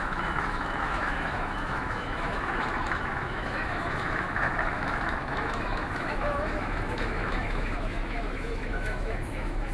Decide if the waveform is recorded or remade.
remade